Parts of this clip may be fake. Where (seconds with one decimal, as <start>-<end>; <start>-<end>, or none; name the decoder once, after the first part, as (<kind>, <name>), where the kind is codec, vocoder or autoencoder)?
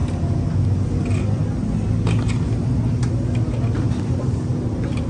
none